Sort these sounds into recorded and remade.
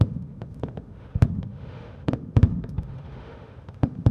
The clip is remade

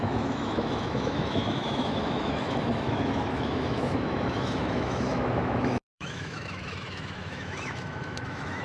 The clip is remade